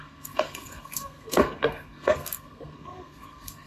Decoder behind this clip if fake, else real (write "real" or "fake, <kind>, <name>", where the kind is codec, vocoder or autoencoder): fake, codec, SNAC